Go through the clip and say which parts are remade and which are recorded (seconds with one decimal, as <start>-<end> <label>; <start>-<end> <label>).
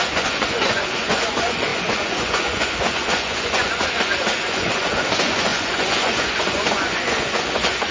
0.0-7.9 remade